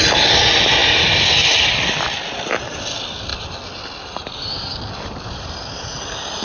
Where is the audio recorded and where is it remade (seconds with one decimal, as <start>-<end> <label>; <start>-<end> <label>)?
0.0-6.4 recorded